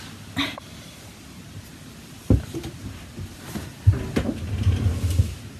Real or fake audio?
real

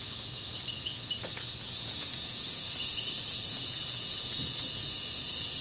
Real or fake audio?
fake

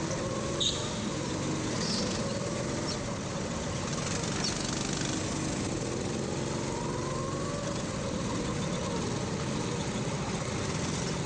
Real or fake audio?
real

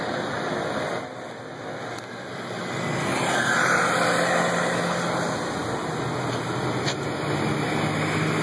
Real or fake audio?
real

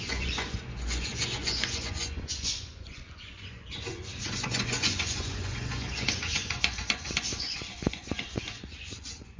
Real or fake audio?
fake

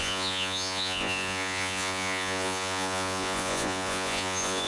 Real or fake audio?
fake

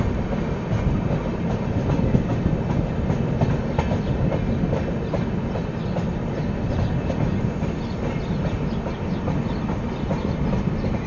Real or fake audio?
real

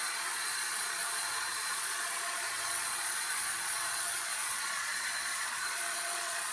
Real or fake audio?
fake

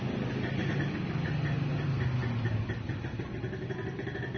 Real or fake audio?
real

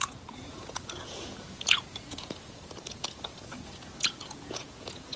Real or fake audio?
fake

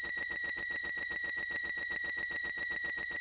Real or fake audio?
fake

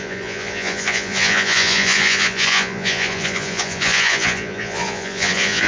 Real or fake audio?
fake